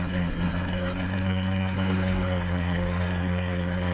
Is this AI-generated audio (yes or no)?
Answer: yes